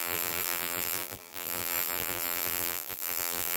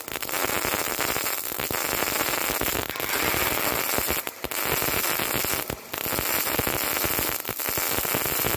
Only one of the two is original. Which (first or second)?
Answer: second